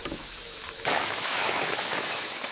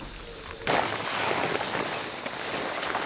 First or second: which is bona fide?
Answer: second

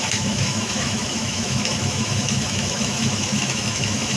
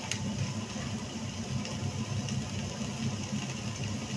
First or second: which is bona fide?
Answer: second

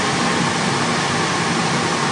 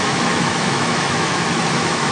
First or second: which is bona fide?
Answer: first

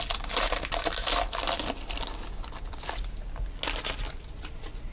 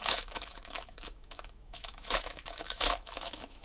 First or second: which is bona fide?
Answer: first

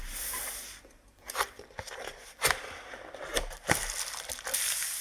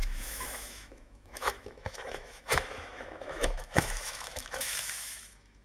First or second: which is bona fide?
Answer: first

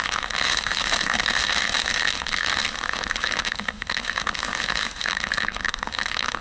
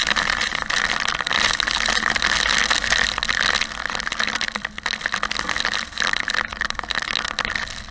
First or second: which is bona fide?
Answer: second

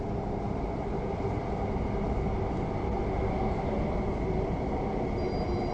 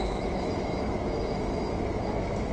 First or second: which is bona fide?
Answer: first